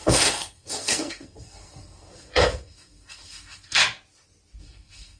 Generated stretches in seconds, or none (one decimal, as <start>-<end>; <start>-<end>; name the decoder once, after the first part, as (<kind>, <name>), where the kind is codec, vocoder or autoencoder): 0.0-3.8 (codec, SNAC); 4.6-5.2